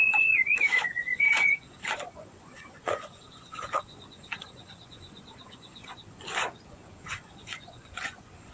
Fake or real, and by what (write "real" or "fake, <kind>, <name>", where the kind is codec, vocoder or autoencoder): fake, vocoder, Vocos